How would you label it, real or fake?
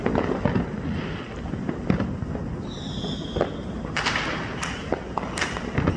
real